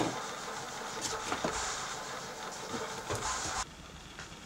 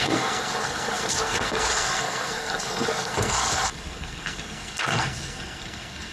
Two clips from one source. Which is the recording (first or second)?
first